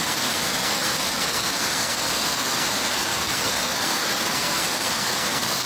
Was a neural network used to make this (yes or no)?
yes